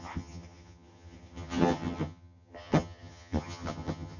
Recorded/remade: remade